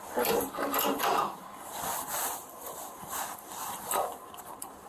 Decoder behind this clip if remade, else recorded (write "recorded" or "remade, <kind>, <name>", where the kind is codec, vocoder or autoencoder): remade, vocoder, BigVGAN v2